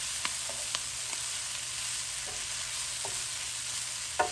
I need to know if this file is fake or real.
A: real